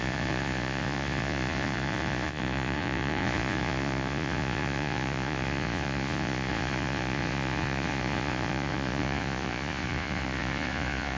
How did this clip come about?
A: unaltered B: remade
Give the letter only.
B